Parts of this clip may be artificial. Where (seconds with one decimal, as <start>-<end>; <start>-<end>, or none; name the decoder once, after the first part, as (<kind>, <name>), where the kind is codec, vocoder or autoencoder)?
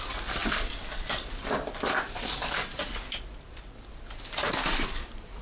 none